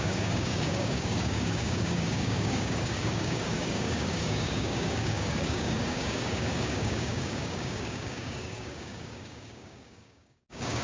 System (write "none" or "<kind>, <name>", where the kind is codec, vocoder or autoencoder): codec, DAC